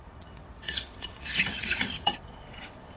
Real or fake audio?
fake